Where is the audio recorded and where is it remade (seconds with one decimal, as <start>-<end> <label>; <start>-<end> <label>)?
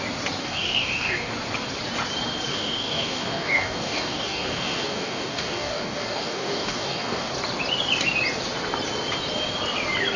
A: 0.0-0.4 recorded; 0.4-1.3 remade; 1.3-2.5 recorded; 2.5-7.3 remade; 7.3-10.2 recorded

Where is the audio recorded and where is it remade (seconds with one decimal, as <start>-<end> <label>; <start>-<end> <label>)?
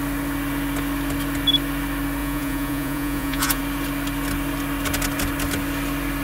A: 0.0-2.2 recorded; 2.2-3.6 remade; 3.6-6.2 recorded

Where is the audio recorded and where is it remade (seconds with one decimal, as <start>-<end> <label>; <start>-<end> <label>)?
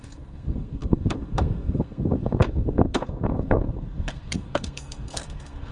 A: 0.0-5.7 remade